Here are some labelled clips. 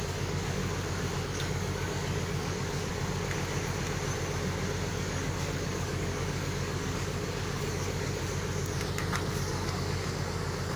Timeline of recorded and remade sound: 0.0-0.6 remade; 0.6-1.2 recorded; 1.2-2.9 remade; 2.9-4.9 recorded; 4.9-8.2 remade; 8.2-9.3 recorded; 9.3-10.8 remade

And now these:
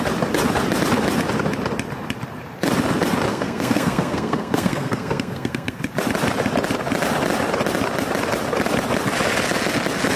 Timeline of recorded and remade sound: 0.0-3.3 recorded; 3.3-5.8 remade; 5.8-10.2 recorded

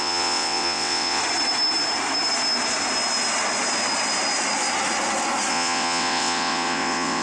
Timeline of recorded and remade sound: 0.0-1.2 remade; 1.2-5.5 recorded; 5.5-7.2 remade